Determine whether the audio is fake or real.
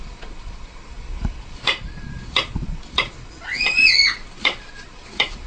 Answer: fake